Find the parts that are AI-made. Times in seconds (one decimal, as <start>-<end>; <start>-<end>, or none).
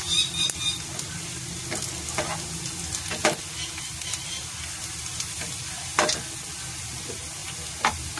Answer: none